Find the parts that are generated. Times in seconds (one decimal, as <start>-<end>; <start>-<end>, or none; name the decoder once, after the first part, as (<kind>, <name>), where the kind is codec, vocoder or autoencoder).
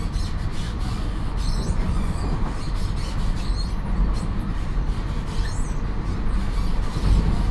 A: 0.5-2.2 (vocoder, Vocos)